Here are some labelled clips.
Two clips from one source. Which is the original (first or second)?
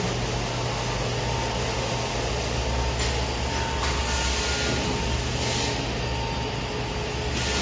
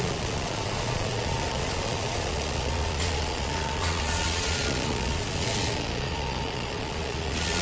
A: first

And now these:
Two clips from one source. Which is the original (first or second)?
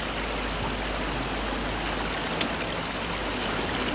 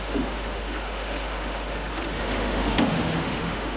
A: first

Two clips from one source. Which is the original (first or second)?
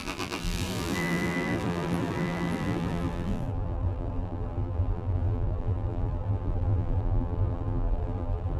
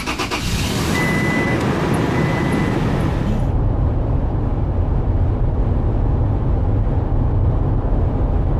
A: second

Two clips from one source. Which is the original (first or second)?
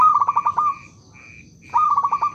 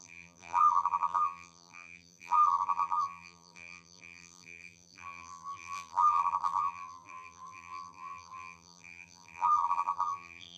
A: first